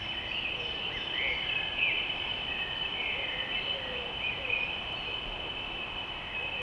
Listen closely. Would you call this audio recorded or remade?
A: recorded